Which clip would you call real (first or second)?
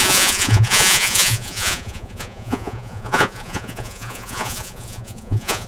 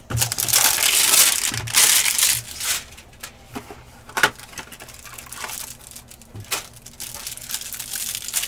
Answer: second